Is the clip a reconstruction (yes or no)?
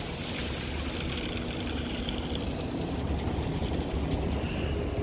no